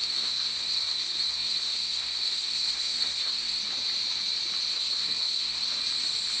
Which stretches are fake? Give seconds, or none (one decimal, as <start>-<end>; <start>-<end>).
0.0-3.6; 4.7-5.8